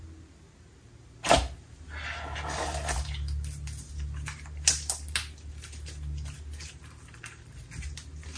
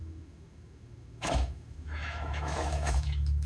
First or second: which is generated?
second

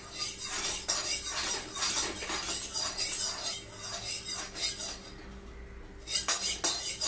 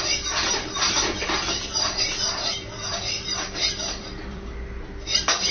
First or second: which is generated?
second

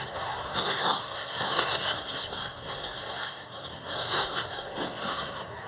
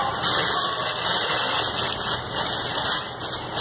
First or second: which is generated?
first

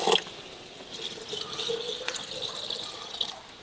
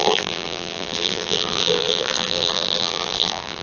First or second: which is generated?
second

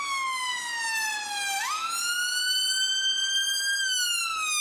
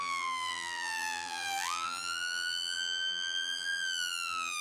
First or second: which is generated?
second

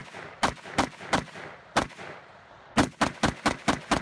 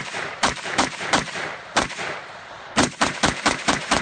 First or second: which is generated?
second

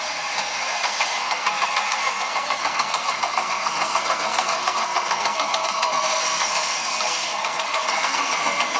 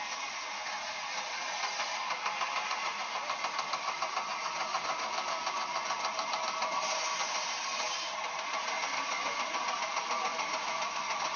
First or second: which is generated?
first